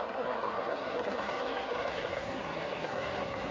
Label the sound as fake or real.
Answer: fake